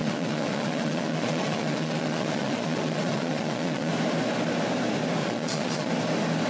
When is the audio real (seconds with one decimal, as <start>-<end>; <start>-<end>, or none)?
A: 3.9-5.2; 5.9-6.5